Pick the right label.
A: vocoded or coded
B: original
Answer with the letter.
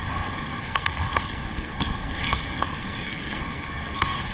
A